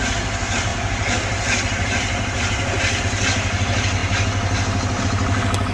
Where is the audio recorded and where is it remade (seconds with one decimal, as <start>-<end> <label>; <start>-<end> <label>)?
0.0-5.7 recorded